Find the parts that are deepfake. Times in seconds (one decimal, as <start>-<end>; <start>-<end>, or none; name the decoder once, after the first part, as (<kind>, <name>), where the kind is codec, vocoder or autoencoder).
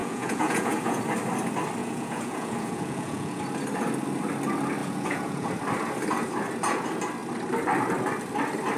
0.0-1.0 (vocoder, Vocos); 1.8-3.4; 4.8-5.5